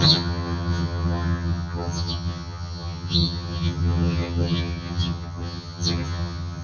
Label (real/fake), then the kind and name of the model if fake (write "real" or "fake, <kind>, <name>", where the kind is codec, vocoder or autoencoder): fake, vocoder, HiFi-GAN